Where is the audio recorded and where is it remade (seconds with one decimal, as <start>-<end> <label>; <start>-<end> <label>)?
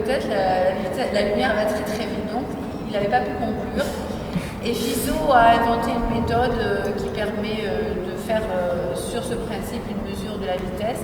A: 0.0-0.8 recorded; 0.8-1.5 remade; 1.5-8.2 recorded; 8.2-8.8 remade; 8.8-9.4 recorded; 9.4-9.9 remade; 9.9-11.0 recorded